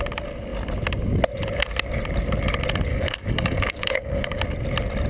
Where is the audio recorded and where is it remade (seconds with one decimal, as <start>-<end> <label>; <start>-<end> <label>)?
0.0-2.9 recorded; 2.9-4.4 remade; 4.4-5.1 recorded